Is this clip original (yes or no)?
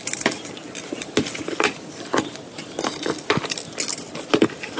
yes